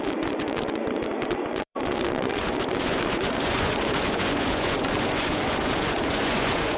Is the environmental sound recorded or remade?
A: remade